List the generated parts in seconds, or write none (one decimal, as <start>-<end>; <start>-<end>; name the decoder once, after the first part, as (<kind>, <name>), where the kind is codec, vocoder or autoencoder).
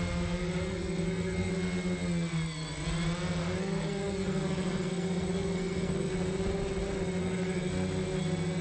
0.4-1.5 (codec, SNAC); 3.4-6.1; 7.2-7.7